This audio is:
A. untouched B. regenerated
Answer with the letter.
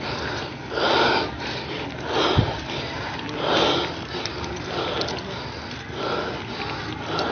A